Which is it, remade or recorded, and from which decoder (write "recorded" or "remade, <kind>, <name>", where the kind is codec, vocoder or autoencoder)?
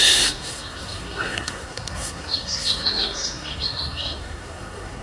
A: remade, codec, SNAC